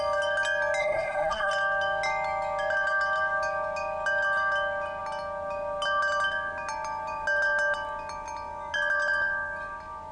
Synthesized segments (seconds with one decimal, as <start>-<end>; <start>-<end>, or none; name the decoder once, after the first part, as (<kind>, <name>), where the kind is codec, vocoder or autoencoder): 0.8-1.5 (codec, SNAC)